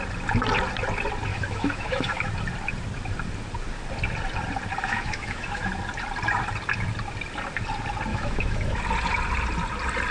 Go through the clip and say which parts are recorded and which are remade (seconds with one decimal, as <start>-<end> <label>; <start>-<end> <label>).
0.0-1.3 recorded; 1.3-2.3 remade; 2.3-4.8 recorded; 4.8-5.7 remade; 5.7-8.1 recorded; 8.1-8.8 remade; 8.8-10.1 recorded